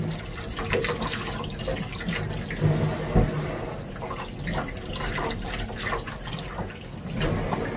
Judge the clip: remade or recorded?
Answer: recorded